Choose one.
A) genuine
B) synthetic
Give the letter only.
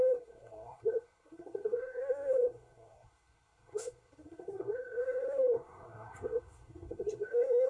B